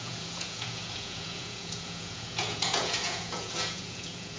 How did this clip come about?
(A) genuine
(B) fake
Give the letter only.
B